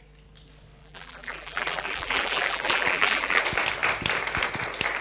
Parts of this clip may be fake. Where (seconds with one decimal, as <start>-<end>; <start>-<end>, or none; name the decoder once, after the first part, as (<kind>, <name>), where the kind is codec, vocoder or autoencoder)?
0.8-3.4 (vocoder, BigVGAN v2)